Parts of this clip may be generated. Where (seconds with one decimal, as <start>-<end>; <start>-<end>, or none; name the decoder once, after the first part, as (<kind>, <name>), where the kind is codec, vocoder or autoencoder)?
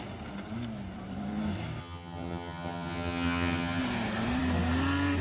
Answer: 1.8-3.8 (vocoder, HiFi-GAN)